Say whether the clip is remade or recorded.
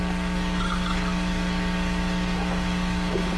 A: remade